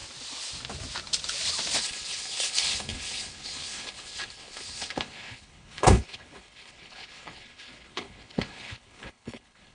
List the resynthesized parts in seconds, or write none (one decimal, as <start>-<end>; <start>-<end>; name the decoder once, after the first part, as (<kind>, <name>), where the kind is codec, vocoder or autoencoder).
1.8-9.7 (codec, HILCodec)